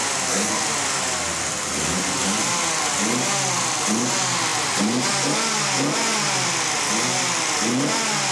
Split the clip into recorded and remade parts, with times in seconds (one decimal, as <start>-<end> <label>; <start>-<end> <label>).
0.0-8.3 recorded

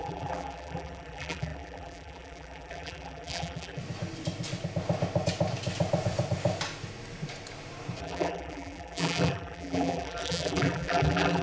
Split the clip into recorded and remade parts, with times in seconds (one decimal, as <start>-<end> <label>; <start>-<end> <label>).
0.0-3.8 remade; 3.8-8.0 recorded; 8.0-11.4 remade

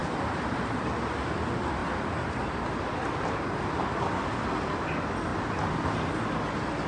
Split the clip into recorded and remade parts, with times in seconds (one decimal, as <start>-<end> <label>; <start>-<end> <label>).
0.0-0.9 remade; 0.9-1.8 recorded; 1.8-4.5 remade; 4.5-5.3 recorded; 5.3-5.9 remade; 5.9-6.9 recorded

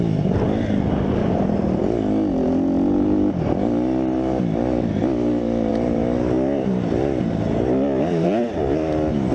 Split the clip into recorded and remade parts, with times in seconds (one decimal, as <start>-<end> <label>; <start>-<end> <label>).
0.0-1.2 recorded; 1.2-1.8 remade; 1.8-9.3 recorded